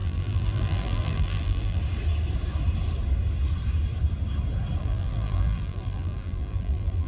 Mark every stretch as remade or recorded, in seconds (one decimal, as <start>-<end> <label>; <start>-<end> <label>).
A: 0.0-1.8 remade; 1.8-4.8 recorded; 4.8-7.1 remade